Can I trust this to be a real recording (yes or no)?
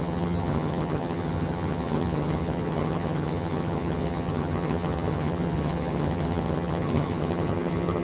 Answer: no